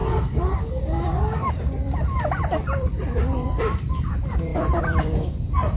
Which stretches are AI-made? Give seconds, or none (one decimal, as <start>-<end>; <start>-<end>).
1.5-5.8